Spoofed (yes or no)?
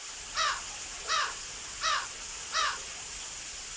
no